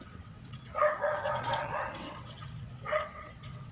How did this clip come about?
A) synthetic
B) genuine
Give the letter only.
A